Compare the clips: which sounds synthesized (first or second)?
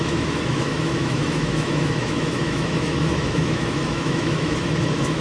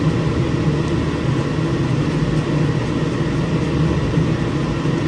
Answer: first